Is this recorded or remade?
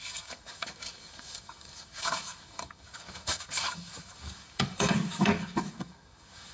remade